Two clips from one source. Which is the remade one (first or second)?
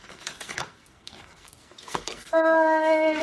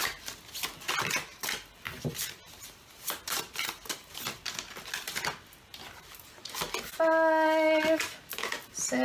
first